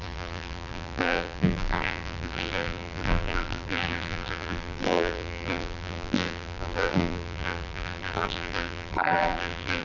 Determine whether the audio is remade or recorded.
remade